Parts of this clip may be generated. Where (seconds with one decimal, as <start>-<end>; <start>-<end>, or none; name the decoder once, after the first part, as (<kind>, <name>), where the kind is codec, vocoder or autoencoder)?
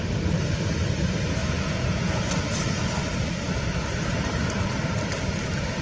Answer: 1.4-2.3 (vocoder, Vocos)